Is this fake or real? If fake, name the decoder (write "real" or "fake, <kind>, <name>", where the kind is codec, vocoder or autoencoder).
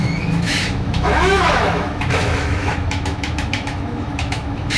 fake, autoencoder, DAC-VAE